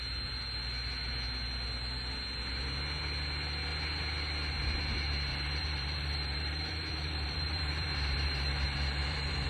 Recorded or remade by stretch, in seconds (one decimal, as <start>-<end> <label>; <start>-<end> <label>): 0.0-5.3 recorded; 5.3-9.5 remade